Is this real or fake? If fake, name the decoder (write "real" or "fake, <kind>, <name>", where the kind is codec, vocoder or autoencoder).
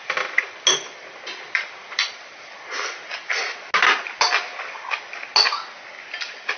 real